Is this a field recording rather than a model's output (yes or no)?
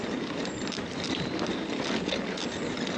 yes